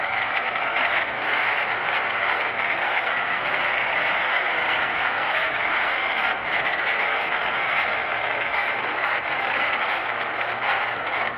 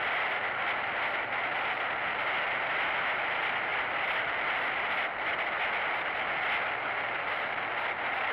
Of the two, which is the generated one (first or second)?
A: first